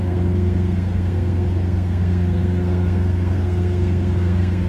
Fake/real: fake